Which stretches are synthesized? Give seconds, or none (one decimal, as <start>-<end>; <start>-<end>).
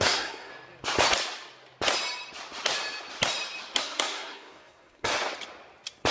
0.0-0.5; 3.8-5.1